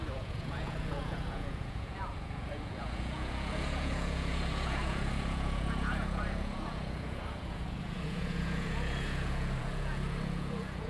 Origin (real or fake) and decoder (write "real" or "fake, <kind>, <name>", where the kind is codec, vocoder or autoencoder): fake, vocoder, Vocos